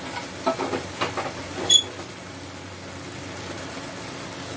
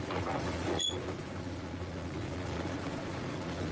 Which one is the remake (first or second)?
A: second